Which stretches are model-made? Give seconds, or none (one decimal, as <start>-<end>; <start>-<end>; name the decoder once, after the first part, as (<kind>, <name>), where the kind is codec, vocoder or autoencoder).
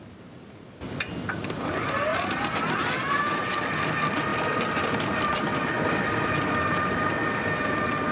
2.1-3.4 (vocoder, BigVGAN v2); 4.3-5.7